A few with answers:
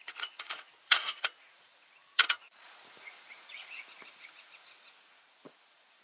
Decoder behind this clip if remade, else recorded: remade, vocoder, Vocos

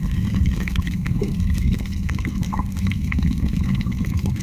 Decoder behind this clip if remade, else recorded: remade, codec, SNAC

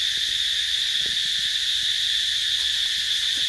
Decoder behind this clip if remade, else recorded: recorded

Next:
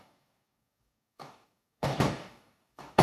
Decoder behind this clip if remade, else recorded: remade, codec, DAC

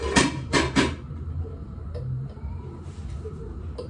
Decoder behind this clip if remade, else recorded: remade, vocoder, BigVGAN v2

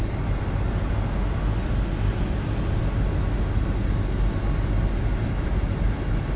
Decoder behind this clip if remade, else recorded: recorded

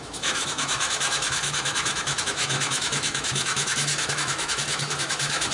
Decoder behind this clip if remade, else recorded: remade, autoencoder, DAC-VAE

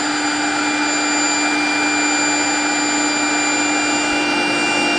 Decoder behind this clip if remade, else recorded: recorded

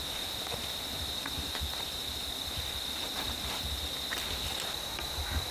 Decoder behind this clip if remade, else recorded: recorded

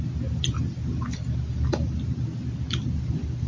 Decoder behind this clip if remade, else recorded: recorded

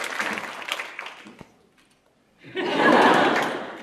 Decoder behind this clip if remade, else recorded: recorded